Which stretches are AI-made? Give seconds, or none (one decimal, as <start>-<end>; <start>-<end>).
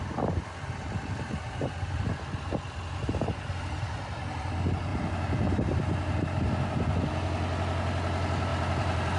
4.9-5.8; 8.5-9.2